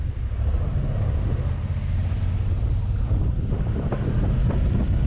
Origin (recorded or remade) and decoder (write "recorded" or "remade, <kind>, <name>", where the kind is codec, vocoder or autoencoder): recorded